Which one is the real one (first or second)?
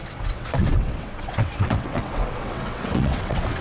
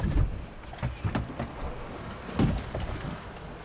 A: second